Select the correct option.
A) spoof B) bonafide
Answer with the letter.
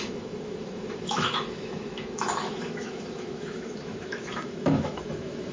A